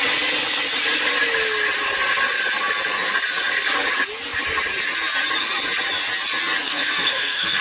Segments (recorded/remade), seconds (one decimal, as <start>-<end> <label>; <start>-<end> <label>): 0.0-6.6 recorded; 6.6-7.6 remade

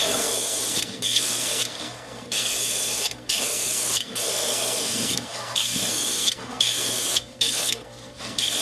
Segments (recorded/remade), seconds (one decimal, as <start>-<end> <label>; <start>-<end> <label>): 0.0-8.6 remade